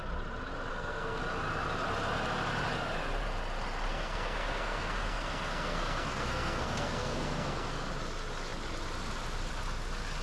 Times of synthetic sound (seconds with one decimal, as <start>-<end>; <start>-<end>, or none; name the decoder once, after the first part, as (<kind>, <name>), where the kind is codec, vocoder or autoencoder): 0.7-1.2 (codec, SNAC); 3.9-7.9